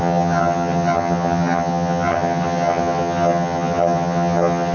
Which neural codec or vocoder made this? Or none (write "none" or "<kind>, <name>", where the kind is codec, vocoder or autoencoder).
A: vocoder, HiFi-GAN